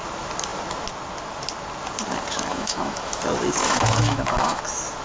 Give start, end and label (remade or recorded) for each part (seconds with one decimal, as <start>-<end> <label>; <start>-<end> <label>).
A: 0.0-2.5 recorded; 2.5-3.2 remade; 3.2-3.6 recorded; 3.6-4.6 remade; 4.6-5.0 recorded